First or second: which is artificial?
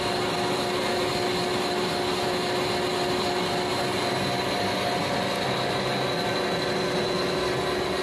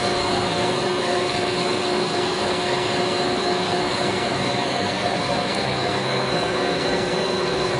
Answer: second